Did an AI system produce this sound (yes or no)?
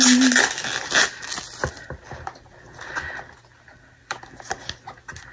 no